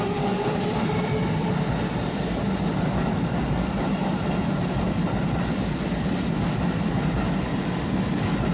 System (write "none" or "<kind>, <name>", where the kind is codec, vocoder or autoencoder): none